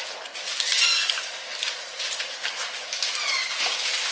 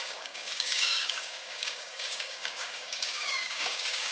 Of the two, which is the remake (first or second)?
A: second